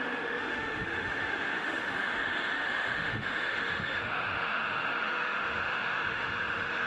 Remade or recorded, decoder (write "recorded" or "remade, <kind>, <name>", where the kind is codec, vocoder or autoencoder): remade, autoencoder, DAC-VAE